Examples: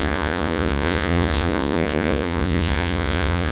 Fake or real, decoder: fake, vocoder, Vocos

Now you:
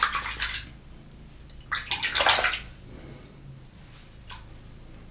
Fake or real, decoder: real